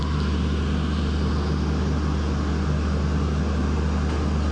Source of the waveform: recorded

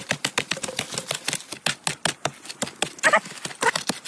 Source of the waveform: recorded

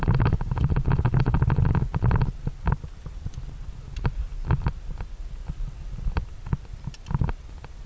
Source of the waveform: recorded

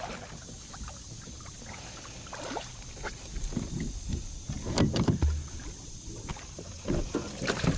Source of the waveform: recorded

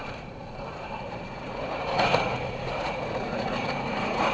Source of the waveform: remade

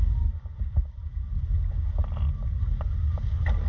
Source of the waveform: recorded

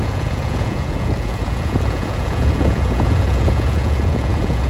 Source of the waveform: remade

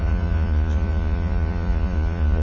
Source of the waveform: remade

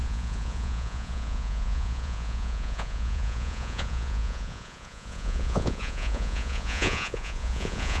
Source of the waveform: remade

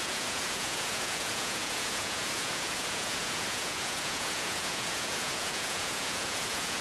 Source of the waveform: remade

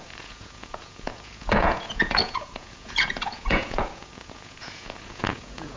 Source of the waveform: remade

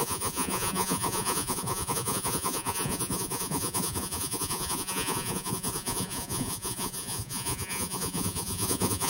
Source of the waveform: remade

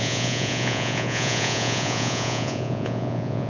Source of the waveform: remade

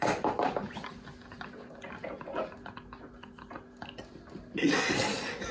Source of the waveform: recorded